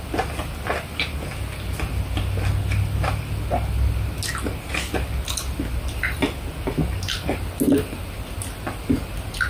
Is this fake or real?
real